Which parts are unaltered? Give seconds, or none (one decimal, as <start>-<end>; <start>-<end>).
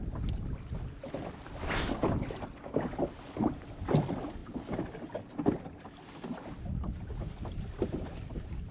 0.0-8.7